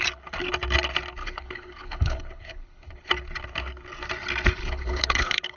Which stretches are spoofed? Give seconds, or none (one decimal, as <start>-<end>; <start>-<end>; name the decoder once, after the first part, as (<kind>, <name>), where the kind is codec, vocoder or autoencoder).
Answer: 1.2-3.1 (codec, HILCodec); 4.6-5.6